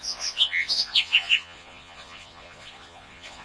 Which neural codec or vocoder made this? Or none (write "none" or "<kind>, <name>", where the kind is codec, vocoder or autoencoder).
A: vocoder, Vocos